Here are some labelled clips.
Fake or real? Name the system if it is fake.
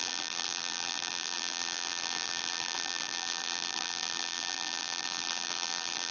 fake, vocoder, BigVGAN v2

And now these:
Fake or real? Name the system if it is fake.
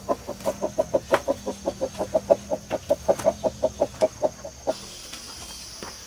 real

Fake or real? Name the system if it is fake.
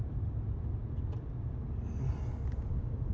real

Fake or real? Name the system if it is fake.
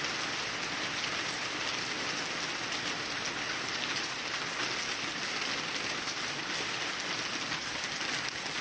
real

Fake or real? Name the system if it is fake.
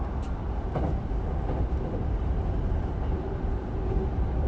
real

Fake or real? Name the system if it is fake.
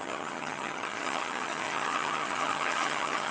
fake, vocoder, HiFi-GAN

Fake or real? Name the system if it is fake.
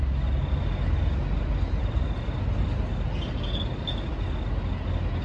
real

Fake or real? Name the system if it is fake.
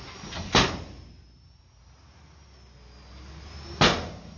real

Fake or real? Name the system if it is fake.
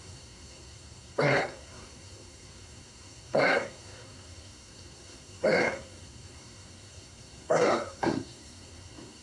fake, codec, SNAC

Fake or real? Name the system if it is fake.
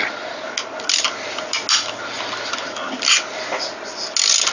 real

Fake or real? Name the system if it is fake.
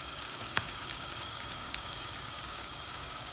fake, codec, DAC